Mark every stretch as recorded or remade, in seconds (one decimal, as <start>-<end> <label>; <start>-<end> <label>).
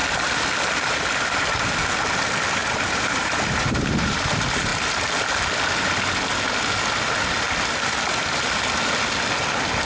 0.0-2.6 recorded; 2.6-4.2 remade; 4.2-9.9 recorded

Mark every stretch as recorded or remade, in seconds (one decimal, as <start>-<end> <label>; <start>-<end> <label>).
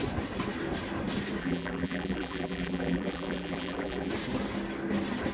0.0-1.4 recorded; 1.4-4.1 remade; 4.1-5.3 recorded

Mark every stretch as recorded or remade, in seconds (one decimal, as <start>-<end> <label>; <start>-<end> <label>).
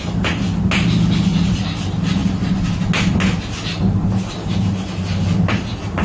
0.0-6.0 recorded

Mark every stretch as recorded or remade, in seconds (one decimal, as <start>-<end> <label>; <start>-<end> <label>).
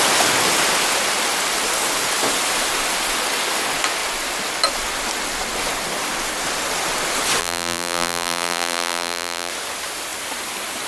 0.0-7.4 recorded; 7.4-9.5 remade; 9.5-10.9 recorded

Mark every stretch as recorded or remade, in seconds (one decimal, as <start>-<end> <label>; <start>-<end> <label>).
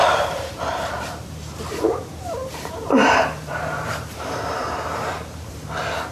0.0-6.1 remade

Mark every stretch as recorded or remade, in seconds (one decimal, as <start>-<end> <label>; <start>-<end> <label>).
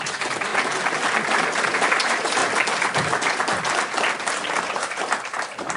0.0-0.5 remade; 0.5-1.6 recorded; 1.6-2.4 remade; 2.4-4.6 recorded; 4.6-5.8 remade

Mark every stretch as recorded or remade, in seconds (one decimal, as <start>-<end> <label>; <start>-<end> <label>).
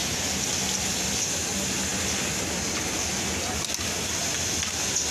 0.0-5.1 recorded